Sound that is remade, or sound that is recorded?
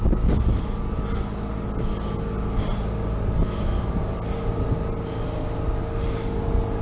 recorded